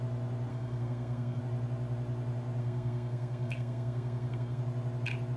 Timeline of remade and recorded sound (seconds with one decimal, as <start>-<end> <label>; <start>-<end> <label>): 0.0-0.5 recorded; 0.5-1.4 remade; 1.4-2.6 recorded; 2.6-4.6 remade; 4.6-5.4 recorded